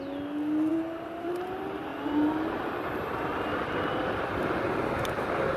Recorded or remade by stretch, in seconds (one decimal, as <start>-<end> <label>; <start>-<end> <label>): 0.0-0.7 recorded; 0.7-1.3 remade; 1.3-5.6 recorded